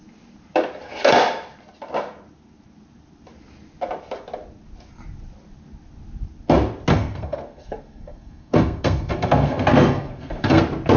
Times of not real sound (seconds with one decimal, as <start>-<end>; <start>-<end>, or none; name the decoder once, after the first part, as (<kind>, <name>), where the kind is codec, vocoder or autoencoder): 6.9-10.6 (codec, SNAC)